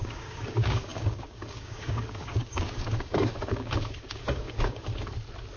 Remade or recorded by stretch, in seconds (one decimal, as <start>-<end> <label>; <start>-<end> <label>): 0.0-4.9 remade; 4.9-5.6 recorded